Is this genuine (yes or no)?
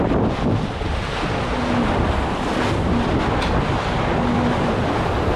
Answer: yes